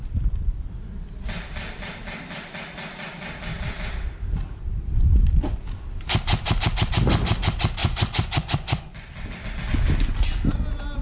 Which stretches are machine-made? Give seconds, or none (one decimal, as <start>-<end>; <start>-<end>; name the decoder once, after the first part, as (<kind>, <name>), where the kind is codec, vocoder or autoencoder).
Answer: 7.8-8.9 (vocoder, Vocos)